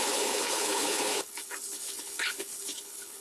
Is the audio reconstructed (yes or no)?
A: yes